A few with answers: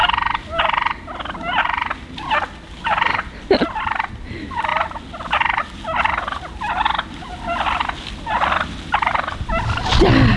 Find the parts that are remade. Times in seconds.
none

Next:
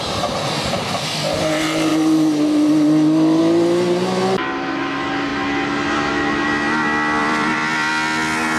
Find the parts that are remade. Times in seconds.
7.2-7.9 (vocoder, BigVGAN v2)

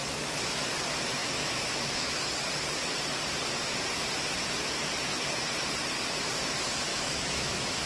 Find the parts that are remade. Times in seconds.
0.0-0.6 (autoencoder, DAC-VAE); 1.2-2.1; 6.9-7.9

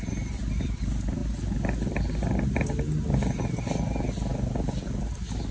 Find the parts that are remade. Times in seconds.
none